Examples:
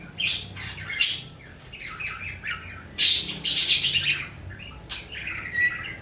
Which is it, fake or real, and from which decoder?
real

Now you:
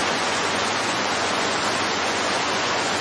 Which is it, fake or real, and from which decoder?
fake, vocoder, Vocos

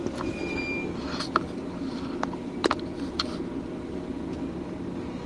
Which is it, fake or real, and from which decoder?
real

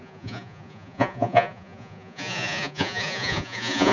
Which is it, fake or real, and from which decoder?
fake, vocoder, Vocos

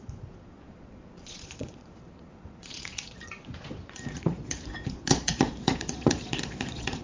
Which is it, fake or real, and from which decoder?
fake, vocoder, Vocos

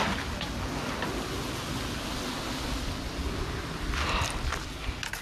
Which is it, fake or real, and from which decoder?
real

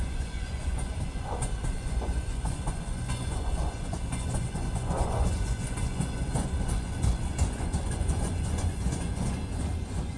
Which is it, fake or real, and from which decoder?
fake, vocoder, Vocos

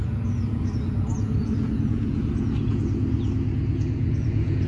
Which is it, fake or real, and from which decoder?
fake, vocoder, Vocos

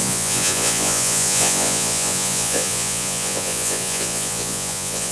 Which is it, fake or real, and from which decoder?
fake, vocoder, Vocos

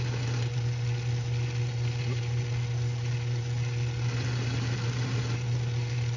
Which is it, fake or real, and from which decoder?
real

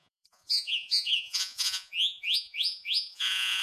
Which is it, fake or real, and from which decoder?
fake, vocoder, Vocos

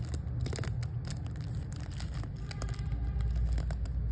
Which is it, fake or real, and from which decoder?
real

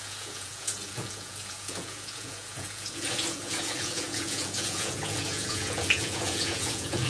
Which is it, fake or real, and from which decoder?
fake, vocoder, Vocos